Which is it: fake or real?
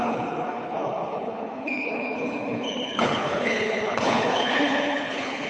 fake